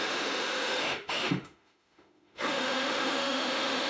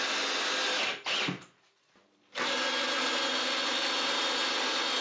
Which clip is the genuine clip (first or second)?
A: second